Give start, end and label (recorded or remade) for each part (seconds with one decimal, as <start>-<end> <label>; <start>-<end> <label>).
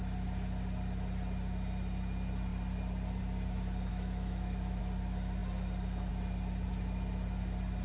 0.0-3.9 recorded; 3.9-4.8 remade; 4.8-7.8 recorded